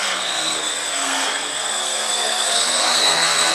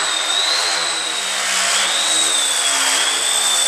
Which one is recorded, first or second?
second